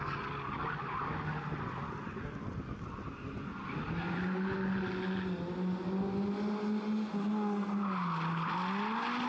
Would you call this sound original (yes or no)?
yes